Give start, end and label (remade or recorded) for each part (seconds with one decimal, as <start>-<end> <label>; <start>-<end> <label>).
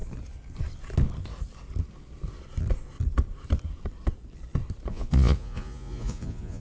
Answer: 0.0-4.9 recorded; 4.9-6.6 remade